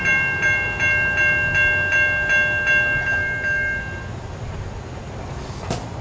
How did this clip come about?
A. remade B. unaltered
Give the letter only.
B